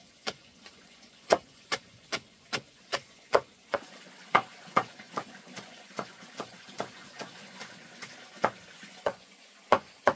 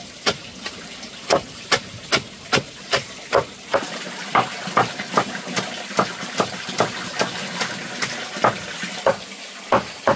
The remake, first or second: first